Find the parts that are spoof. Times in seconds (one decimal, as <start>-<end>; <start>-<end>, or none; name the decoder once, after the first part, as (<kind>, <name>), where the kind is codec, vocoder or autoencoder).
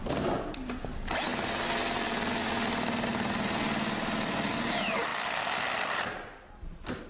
0.0-1.3 (vocoder, BigVGAN v2); 2.3-3.1; 4.5-7.1